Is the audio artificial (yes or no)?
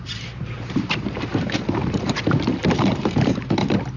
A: yes